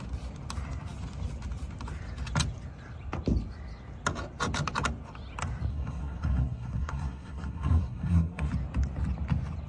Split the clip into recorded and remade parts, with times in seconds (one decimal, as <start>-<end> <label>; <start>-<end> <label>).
0.0-5.7 recorded; 5.7-8.5 remade; 8.5-9.7 recorded